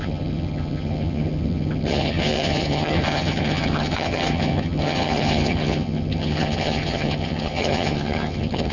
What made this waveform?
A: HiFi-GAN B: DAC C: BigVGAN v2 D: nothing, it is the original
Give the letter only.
A